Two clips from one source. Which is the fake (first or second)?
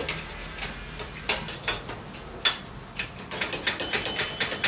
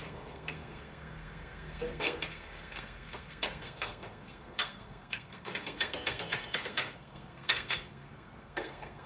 second